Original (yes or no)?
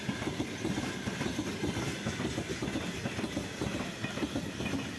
yes